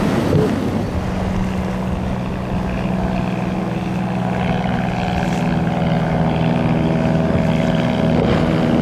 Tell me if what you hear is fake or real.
real